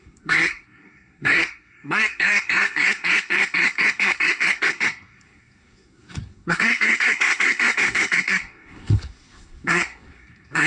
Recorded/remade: remade